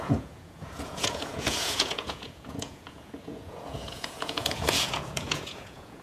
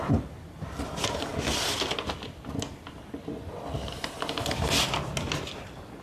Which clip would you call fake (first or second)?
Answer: first